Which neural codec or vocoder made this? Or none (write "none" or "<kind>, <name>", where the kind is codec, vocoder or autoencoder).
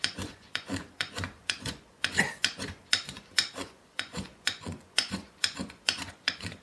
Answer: vocoder, Vocos